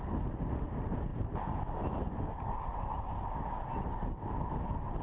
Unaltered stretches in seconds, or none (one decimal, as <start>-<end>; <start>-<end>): 0.0-5.0